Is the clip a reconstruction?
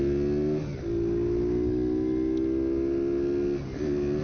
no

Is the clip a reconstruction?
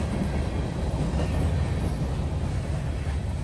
no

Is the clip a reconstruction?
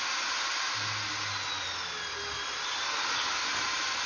no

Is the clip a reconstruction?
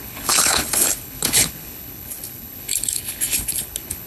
yes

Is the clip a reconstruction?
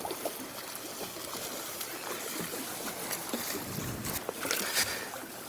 no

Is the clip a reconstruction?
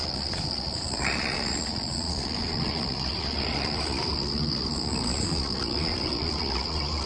yes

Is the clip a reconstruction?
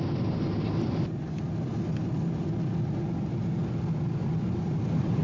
no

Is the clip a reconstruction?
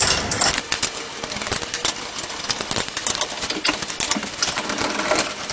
no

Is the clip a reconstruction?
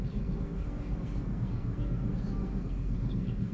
yes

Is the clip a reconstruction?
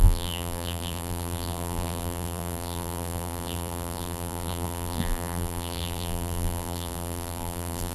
yes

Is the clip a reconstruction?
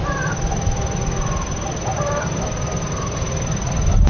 no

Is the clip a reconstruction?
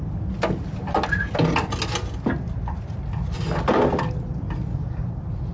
no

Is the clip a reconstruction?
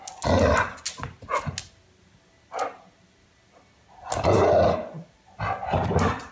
no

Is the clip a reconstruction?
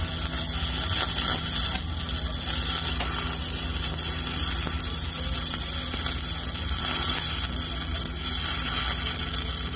no